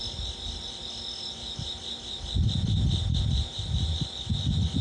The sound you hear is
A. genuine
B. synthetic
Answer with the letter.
A